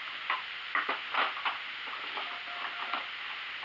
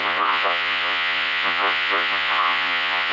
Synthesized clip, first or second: second